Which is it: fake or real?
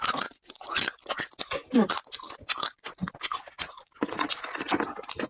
real